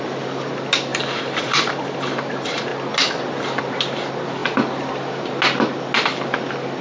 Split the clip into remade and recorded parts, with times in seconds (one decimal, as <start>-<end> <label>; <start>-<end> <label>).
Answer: 0.0-0.9 recorded; 0.9-2.1 remade; 2.1-6.8 recorded